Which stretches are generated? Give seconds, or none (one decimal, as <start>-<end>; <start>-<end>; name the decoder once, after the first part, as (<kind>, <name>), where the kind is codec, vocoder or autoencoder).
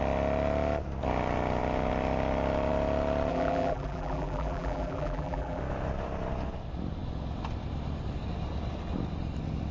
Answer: 3.3-5.6 (vocoder, BigVGAN v2)